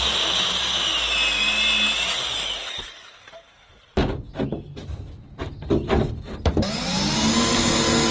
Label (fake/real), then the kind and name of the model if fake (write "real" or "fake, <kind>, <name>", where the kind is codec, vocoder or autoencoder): real